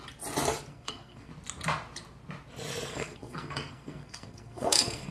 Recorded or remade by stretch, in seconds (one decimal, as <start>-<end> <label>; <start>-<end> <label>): 0.0-0.7 recorded; 0.7-1.3 remade; 1.3-2.9 recorded; 2.9-5.1 remade